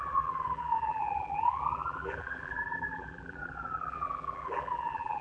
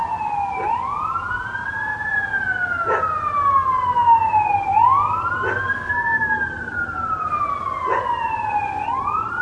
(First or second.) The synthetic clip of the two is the first